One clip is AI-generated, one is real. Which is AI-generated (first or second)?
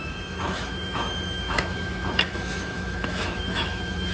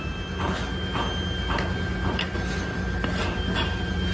first